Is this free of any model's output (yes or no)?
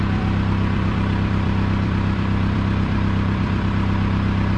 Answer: no